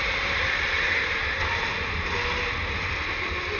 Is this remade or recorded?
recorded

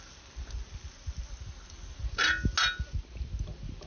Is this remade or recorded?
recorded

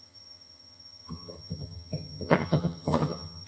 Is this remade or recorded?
remade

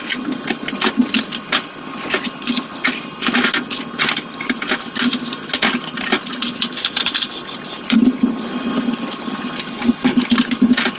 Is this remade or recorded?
recorded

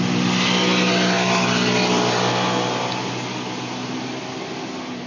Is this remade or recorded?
recorded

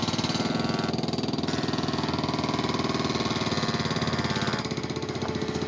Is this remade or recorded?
recorded